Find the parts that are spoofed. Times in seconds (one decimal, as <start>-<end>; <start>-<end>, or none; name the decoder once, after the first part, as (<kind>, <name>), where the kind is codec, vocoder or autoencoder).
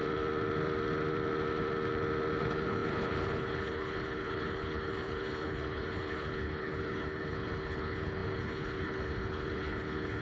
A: 2.4-10.2 (codec, HILCodec)